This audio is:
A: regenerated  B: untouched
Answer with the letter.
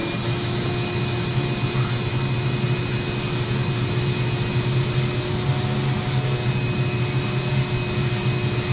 B